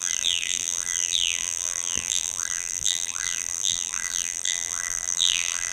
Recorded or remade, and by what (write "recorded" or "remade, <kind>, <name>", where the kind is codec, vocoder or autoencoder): remade, vocoder, BigVGAN v2